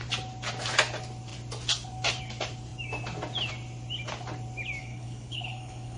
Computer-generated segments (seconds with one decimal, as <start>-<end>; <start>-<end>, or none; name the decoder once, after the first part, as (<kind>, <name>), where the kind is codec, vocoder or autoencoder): 4.8-6.0 (codec, HILCodec)